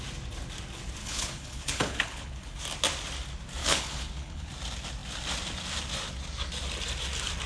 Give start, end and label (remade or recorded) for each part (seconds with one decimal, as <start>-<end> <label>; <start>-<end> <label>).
0.0-1.0 recorded; 1.0-2.6 remade; 2.6-3.6 recorded; 3.6-4.5 remade; 4.5-7.5 recorded